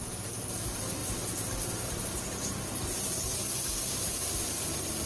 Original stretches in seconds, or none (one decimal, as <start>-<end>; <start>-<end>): 3.4-5.1